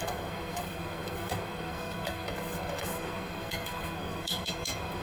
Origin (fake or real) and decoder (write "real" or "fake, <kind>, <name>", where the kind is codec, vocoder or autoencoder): fake, codec, SNAC